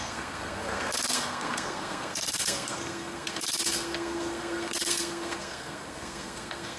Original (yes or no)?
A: no